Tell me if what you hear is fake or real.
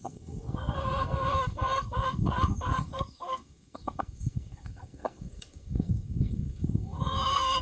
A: fake